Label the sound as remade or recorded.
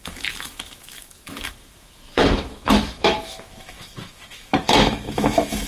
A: remade